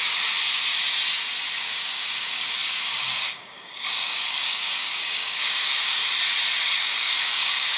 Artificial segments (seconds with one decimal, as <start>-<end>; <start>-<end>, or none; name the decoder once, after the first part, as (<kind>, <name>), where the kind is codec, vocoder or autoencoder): 1.5-6.0 (codec, DAC); 6.6-7.8